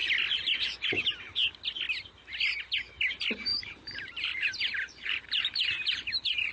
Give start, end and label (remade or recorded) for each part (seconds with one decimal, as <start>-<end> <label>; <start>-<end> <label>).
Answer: 0.0-3.5 recorded; 3.5-6.5 remade